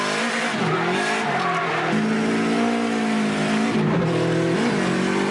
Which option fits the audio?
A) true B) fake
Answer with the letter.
A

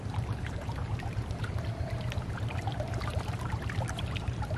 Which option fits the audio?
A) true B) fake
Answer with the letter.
B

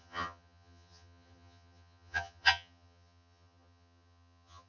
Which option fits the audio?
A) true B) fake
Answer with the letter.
B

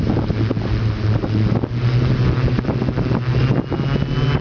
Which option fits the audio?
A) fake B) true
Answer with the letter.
B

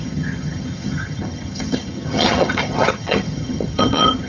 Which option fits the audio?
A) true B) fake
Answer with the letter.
B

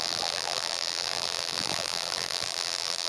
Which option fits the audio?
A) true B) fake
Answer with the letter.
B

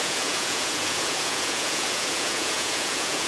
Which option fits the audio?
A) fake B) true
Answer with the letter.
A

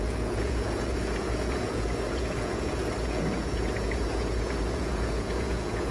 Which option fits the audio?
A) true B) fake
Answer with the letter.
B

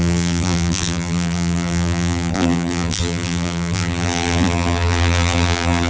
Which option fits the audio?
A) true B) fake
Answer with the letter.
B